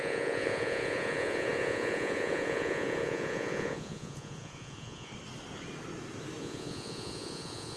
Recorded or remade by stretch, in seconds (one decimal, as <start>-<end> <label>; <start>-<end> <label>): 0.0-5.1 remade; 5.1-6.4 recorded; 6.4-7.8 remade